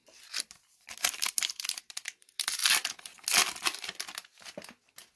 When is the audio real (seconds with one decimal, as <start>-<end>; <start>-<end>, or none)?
0.0-5.2